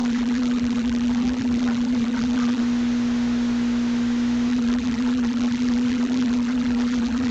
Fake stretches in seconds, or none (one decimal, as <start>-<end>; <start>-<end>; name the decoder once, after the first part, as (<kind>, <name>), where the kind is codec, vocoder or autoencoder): 0.0-2.6 (vocoder, BigVGAN v2); 4.5-7.3